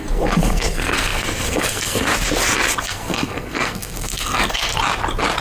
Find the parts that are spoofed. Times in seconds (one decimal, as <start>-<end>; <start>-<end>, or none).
0.0-2.1; 2.8-4.7